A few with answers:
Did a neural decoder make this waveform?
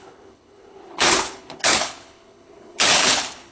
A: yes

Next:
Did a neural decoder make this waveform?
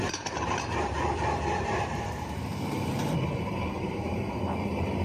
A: yes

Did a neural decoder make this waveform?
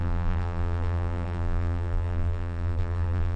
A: yes